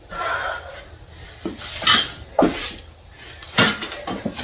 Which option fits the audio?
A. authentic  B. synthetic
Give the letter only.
A